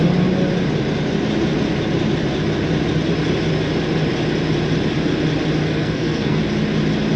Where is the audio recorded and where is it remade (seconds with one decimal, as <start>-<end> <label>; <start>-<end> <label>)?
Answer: 0.0-5.6 recorded; 5.6-6.4 remade; 6.4-7.2 recorded